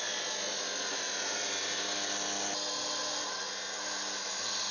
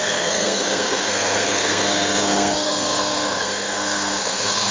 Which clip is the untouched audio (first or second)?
first